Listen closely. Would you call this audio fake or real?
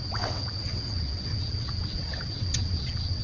fake